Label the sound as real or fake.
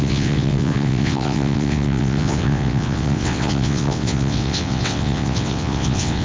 fake